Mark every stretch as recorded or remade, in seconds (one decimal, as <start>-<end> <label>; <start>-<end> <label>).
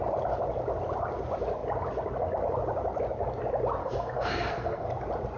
0.0-3.8 recorded; 3.8-4.9 remade; 4.9-5.4 recorded